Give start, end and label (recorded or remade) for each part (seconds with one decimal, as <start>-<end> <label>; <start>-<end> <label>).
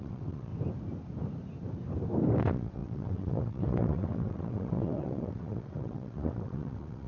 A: 0.0-0.5 remade; 0.5-2.4 recorded; 2.4-7.1 remade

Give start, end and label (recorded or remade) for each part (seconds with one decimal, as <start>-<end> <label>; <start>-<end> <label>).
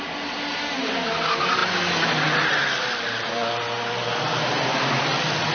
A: 0.0-5.5 recorded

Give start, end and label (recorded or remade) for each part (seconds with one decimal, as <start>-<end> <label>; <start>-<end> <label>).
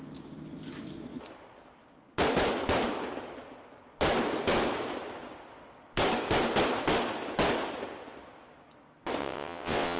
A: 0.0-9.2 recorded; 9.2-10.0 remade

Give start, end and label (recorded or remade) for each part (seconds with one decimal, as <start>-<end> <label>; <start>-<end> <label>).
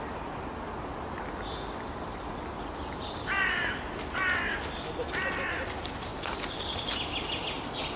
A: 0.0-8.0 recorded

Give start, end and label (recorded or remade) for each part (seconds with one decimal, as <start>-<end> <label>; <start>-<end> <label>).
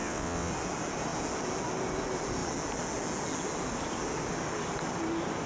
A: 0.0-0.5 remade; 0.5-5.5 recorded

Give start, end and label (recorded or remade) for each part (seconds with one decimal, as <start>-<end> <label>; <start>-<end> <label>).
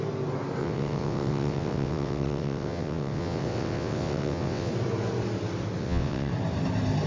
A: 0.0-0.6 recorded; 0.6-4.7 remade; 4.7-5.8 recorded; 5.8-6.3 remade; 6.3-7.1 recorded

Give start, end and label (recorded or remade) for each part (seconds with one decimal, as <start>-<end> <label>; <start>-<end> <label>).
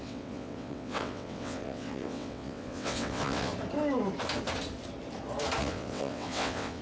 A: 0.0-3.5 remade; 3.5-5.6 recorded; 5.6-6.8 remade